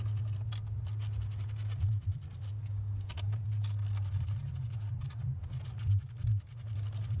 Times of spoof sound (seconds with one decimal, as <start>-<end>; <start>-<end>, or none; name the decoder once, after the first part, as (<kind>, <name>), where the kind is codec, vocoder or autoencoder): none